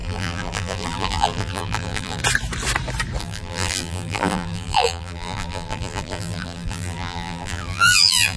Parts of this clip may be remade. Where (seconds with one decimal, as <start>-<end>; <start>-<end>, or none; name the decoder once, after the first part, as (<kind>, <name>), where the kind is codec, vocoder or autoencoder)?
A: 0.0-2.2 (vocoder, BigVGAN v2); 3.2-8.4